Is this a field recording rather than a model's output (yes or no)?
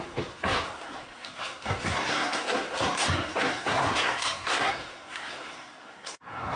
no